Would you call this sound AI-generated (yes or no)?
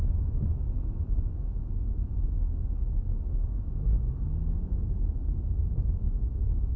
yes